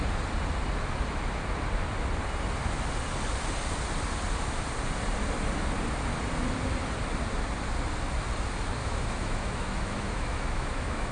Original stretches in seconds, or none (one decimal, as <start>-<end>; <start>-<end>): 0.0-8.8